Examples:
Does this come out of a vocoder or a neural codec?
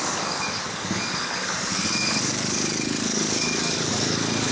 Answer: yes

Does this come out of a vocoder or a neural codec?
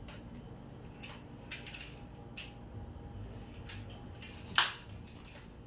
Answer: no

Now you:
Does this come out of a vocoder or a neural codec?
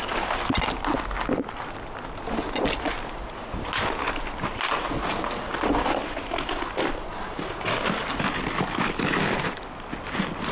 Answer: no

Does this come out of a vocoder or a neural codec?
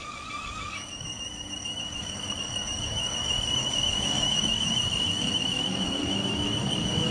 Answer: yes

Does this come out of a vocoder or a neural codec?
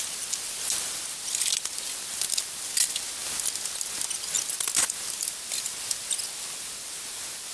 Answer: no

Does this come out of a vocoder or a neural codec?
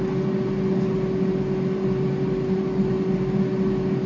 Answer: no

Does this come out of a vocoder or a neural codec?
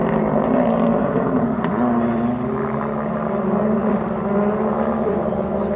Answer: no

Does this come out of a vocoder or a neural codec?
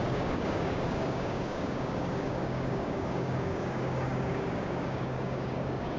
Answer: yes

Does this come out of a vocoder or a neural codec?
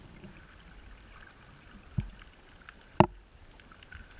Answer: no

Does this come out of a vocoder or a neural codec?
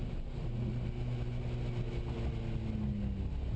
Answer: no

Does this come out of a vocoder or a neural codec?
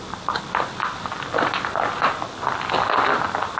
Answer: no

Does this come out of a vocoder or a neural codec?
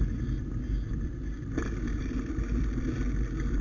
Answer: no